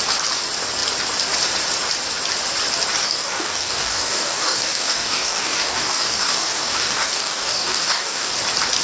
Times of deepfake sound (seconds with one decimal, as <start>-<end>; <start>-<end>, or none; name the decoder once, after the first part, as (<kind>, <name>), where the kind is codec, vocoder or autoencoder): 3.0-8.3 (codec, DAC)